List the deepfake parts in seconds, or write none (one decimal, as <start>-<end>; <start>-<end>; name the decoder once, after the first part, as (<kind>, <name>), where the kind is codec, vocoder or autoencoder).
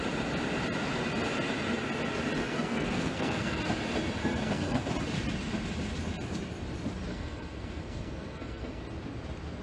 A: 2.4-3.6 (codec, SNAC); 4.2-4.9; 7.1-8.8